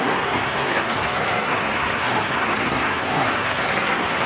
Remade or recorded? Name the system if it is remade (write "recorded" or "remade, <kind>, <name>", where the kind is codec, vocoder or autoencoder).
remade, codec, SNAC